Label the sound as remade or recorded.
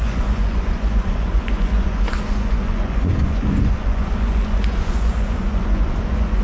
remade